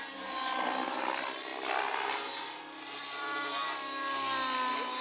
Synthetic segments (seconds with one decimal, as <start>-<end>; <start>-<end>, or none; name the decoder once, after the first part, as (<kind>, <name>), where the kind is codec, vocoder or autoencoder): none